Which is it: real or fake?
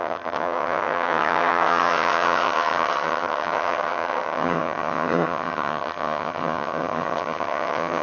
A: fake